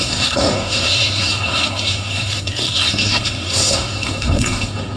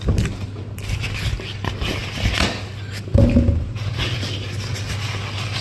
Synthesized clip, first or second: first